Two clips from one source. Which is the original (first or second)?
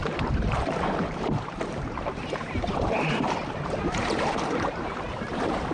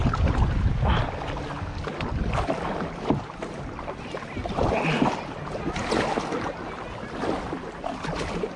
second